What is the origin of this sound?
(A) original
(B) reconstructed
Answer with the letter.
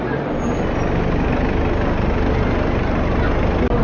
A